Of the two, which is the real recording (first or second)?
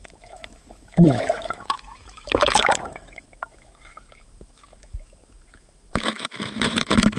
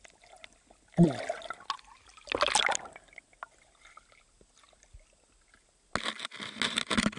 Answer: second